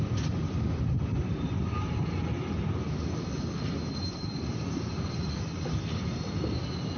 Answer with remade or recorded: recorded